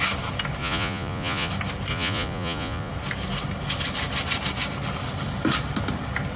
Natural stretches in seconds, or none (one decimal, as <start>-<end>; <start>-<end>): 0.0-0.6; 1.5-1.9; 2.9-6.4